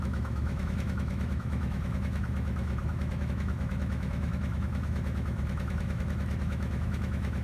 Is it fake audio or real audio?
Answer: fake